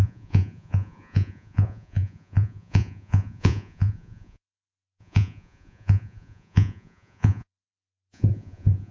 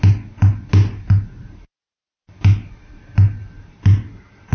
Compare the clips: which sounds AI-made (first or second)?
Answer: first